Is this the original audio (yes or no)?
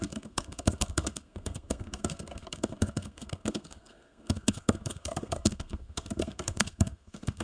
no